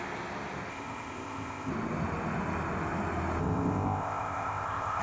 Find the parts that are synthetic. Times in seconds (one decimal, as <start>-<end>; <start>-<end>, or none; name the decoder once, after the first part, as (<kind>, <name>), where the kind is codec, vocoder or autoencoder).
0.7-1.7 (codec, ZipCodec); 3.4-5.0